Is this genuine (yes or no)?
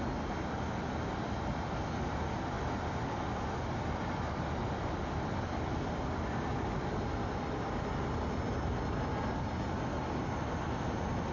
yes